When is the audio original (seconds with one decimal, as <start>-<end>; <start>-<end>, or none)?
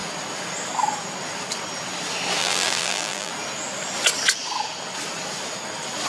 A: 0.0-2.4; 3.3-6.1